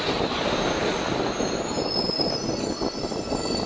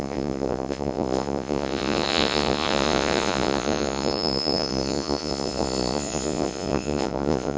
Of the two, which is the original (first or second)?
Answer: first